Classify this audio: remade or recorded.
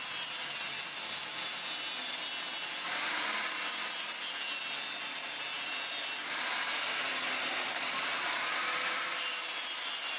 recorded